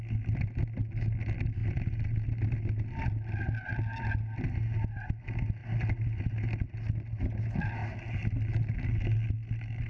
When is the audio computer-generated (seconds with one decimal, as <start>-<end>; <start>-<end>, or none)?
none